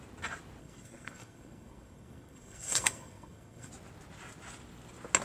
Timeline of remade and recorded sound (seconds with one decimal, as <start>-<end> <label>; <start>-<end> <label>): 0.0-0.6 recorded; 0.6-3.7 remade; 3.7-5.2 recorded